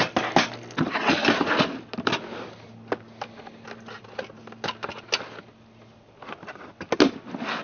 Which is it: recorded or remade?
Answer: recorded